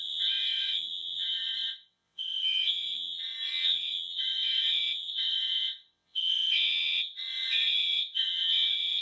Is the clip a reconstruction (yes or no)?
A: yes